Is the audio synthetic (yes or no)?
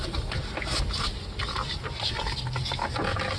no